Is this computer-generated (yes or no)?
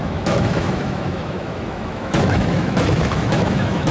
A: yes